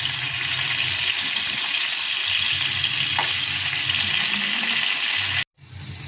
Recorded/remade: recorded